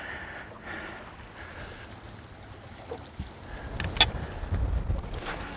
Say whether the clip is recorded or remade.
recorded